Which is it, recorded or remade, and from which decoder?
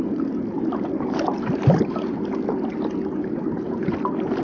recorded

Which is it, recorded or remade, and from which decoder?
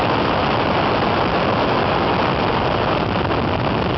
recorded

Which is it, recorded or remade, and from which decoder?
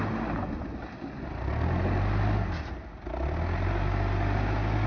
recorded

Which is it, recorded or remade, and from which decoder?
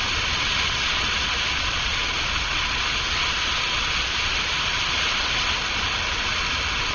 recorded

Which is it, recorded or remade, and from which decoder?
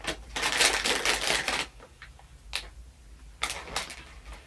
recorded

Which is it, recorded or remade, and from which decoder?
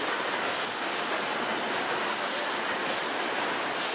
recorded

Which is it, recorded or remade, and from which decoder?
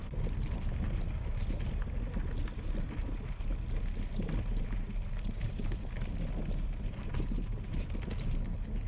recorded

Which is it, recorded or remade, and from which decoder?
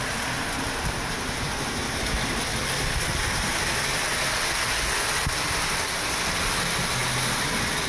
recorded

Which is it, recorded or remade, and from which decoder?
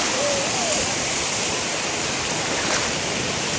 recorded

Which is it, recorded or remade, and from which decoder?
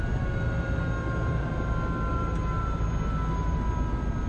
recorded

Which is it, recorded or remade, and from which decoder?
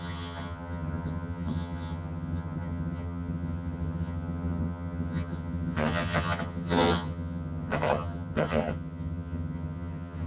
remade, vocoder, HiFi-GAN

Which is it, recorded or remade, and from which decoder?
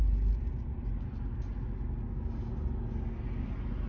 recorded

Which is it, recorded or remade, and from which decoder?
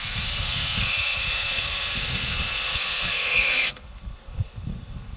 remade, codec, SNAC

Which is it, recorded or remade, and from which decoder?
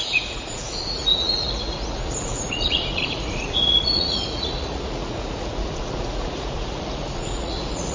remade, vocoder, Vocos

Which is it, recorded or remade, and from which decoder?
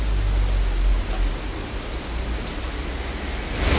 recorded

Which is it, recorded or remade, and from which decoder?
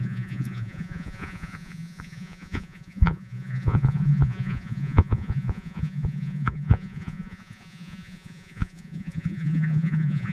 remade, vocoder, Vocos